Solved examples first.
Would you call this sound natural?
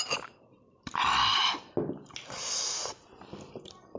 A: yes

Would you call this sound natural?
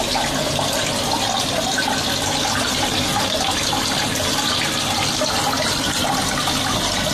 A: yes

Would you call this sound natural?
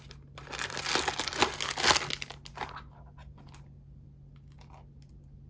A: yes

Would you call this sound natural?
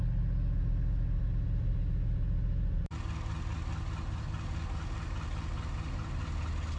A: yes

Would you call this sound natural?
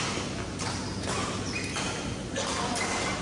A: yes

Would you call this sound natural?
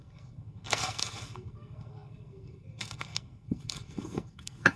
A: no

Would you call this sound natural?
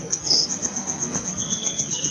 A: no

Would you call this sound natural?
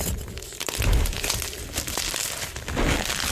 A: yes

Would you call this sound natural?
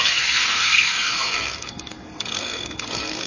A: no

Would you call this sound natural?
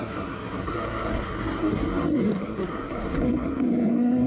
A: no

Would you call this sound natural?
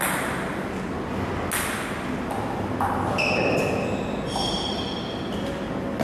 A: yes